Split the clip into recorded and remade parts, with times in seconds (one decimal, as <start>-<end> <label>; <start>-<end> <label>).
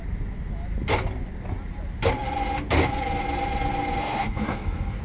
0.0-4.0 recorded; 4.0-5.0 remade